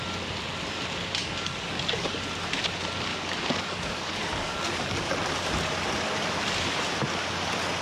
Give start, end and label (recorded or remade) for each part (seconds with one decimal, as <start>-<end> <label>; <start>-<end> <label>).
0.0-1.2 recorded; 1.2-2.2 remade; 2.2-3.1 recorded; 3.1-5.1 remade; 5.1-7.8 recorded